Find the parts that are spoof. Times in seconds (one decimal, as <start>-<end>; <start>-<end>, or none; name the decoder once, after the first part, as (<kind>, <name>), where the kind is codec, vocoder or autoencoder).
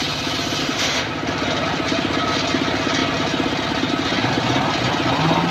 0.6-1.1 (autoencoder, DAC-VAE)